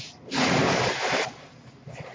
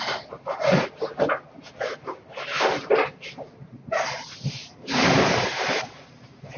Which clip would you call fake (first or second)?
second